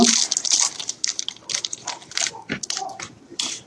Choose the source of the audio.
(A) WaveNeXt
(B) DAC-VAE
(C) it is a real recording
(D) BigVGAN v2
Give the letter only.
C